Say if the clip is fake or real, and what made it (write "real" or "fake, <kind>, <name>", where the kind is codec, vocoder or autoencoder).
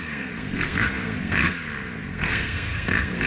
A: fake, codec, SNAC